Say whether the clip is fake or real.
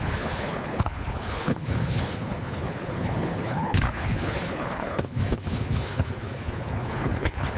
fake